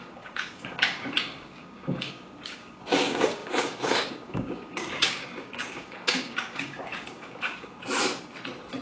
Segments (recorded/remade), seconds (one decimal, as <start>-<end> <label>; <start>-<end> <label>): 0.0-7.8 remade; 7.8-8.8 recorded